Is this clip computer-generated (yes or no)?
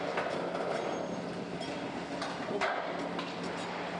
no